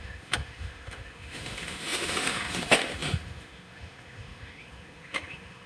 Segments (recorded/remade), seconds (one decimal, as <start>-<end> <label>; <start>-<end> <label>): 0.0-5.7 remade